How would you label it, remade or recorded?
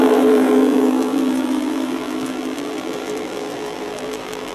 remade